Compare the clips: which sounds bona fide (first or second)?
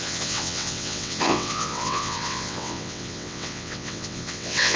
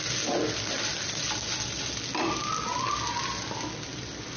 second